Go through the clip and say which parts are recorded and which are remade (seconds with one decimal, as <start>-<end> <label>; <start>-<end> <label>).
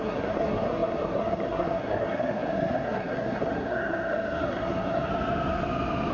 0.0-5.1 remade; 5.1-6.1 recorded